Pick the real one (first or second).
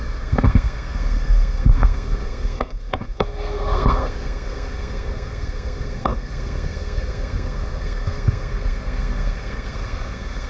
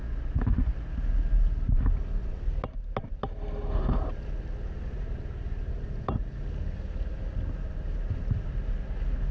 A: second